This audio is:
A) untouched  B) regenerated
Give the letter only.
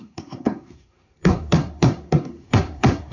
B